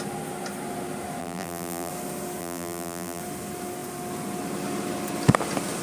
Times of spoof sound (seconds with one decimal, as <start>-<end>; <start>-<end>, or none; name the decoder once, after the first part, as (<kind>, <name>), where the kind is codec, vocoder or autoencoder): 1.2-1.9 (vocoder, BigVGAN v2); 2.4-3.2